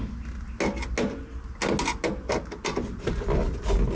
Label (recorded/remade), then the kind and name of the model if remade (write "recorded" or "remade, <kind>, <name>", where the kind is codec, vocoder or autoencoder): recorded